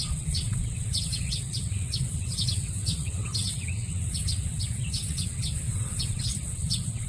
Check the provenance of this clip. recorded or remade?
remade